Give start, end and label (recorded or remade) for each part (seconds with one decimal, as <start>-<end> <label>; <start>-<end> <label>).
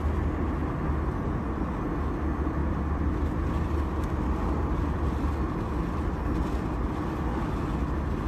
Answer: 0.0-8.3 recorded